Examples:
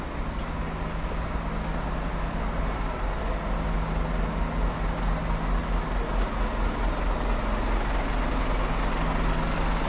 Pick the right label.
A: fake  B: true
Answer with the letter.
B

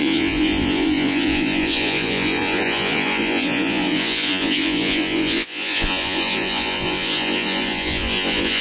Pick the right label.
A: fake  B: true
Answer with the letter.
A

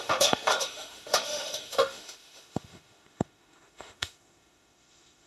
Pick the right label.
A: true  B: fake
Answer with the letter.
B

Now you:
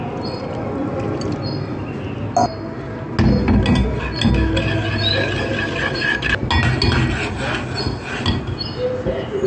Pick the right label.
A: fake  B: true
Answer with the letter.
B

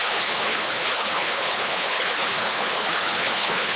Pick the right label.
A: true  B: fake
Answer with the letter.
B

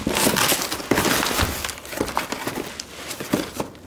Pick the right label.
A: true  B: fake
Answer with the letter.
A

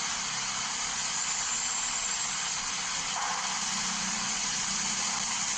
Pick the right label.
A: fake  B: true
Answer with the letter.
B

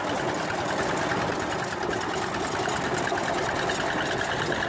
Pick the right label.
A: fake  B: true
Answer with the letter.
B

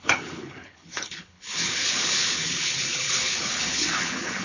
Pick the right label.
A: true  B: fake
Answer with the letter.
B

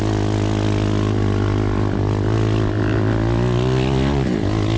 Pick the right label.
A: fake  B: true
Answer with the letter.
B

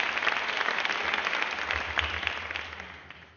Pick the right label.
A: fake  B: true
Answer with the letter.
B